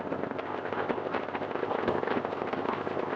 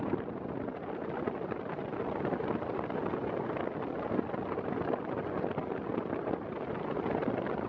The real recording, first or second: second